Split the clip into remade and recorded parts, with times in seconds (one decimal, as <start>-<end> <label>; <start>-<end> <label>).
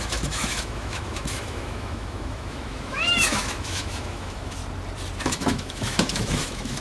0.0-4.6 remade; 4.6-5.2 recorded; 5.2-6.8 remade